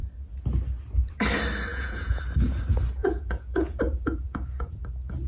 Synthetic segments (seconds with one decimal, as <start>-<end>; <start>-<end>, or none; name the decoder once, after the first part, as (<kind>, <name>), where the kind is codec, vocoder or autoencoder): 1.7-2.2 (vocoder, Vocos); 3.0-4.8